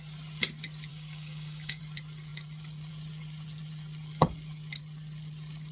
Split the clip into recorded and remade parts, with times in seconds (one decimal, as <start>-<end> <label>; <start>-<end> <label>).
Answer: 0.0-0.9 recorded; 0.9-1.8 remade; 1.8-5.7 recorded